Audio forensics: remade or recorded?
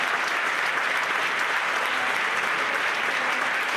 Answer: recorded